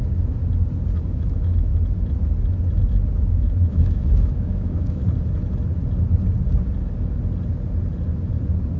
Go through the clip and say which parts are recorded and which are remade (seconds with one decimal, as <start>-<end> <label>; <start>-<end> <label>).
0.0-1.1 recorded; 1.1-1.7 remade; 1.7-3.2 recorded; 3.2-5.0 remade; 5.0-8.8 recorded